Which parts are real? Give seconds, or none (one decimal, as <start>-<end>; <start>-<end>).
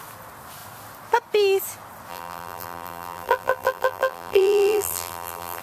0.0-2.1